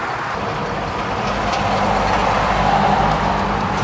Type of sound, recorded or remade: recorded